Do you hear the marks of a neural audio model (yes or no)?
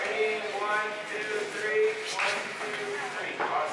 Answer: no